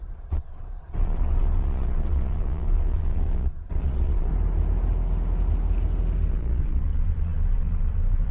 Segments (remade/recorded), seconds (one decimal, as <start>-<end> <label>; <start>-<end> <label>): 0.0-4.3 remade; 4.3-6.3 recorded; 6.3-8.3 remade